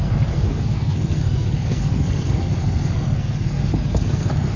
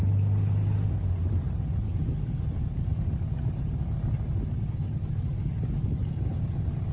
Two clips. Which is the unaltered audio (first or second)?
second